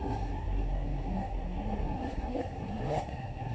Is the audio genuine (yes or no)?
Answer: no